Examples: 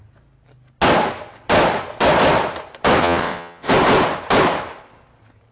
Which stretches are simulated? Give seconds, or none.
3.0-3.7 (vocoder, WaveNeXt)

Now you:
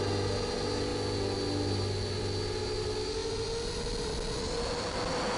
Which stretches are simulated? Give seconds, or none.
none

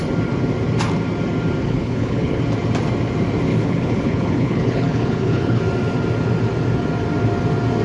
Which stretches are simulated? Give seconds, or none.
1.6-2.4 (codec, HILCodec); 3.5-5.6

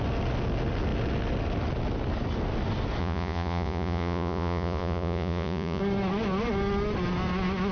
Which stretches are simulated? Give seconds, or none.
3.0-5.8 (vocoder, Vocos)

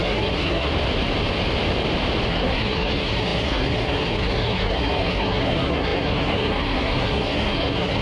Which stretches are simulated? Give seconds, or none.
0.0-0.7 (codec, SNAC); 2.3-8.0

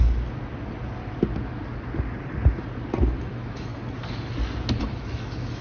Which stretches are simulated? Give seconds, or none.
3.2-3.7 (autoencoder, DAC-VAE); 4.8-5.6

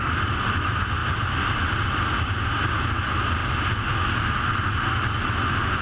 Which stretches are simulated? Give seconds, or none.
none